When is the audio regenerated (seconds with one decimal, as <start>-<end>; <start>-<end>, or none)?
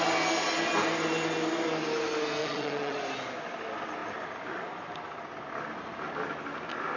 2.4-3.0